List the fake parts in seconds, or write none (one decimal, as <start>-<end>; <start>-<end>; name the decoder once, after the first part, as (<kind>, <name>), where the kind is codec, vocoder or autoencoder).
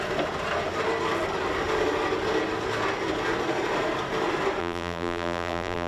4.6-5.9 (vocoder, BigVGAN v2)